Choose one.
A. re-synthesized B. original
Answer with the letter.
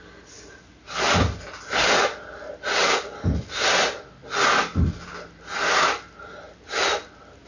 B